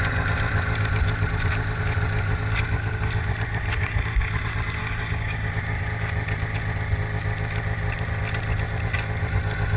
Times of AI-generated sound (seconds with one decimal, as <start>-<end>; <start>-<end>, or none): 3.7-4.3; 4.8-5.5